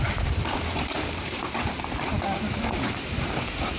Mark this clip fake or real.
fake